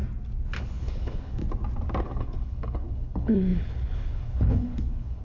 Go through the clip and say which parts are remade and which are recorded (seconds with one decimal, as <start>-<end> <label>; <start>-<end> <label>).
0.0-0.6 recorded; 0.6-1.4 remade; 1.4-2.0 recorded; 2.0-5.2 remade